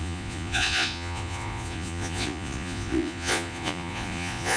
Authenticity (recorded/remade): remade